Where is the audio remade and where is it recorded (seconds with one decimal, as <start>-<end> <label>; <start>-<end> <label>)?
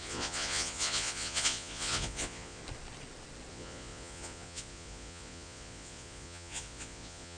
0.0-2.6 remade; 2.6-3.5 recorded; 3.5-7.4 remade